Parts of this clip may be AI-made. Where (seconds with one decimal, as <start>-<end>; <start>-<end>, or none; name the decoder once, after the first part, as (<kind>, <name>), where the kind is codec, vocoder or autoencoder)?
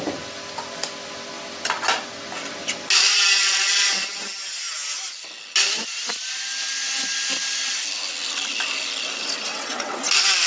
3.4-4.1 (vocoder, WaveNeXt); 9.5-10.0